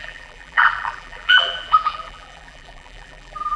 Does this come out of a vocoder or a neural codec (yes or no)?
yes